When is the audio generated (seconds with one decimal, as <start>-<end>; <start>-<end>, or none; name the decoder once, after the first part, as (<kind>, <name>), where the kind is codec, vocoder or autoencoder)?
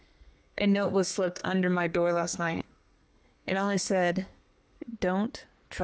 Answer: 0.0-4.9 (codec, SNAC)